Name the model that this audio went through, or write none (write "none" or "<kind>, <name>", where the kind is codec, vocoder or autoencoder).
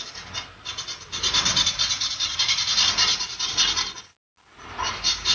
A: none